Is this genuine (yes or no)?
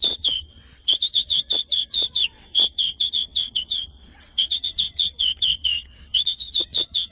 no